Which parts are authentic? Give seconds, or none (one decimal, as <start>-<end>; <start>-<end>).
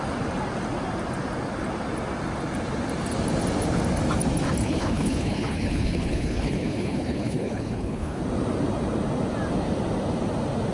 0.0-4.6; 8.2-10.7